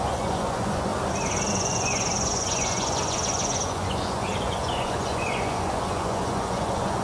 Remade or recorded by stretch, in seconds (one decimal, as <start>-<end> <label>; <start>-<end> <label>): 0.0-0.9 remade; 0.9-1.5 recorded; 1.5-7.0 remade